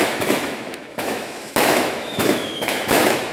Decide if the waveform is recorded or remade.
remade